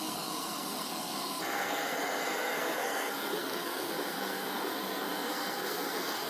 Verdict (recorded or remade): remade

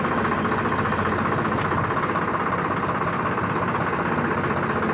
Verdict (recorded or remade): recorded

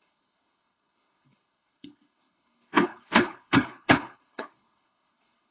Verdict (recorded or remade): remade